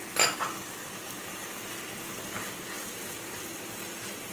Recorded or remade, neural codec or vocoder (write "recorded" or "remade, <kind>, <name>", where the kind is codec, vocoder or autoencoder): recorded